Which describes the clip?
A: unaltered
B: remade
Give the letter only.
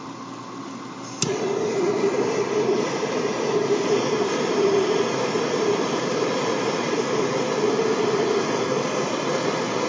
A